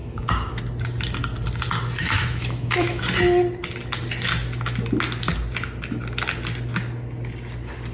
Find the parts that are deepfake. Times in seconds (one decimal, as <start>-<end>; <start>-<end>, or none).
0.0-0.6; 2.0-3.0